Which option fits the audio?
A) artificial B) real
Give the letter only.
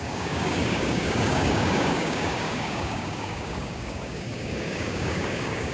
A